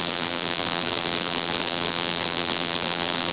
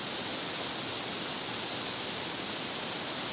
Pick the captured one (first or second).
second